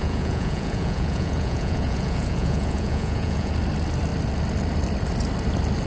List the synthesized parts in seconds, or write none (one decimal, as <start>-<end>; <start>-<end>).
0.0-3.5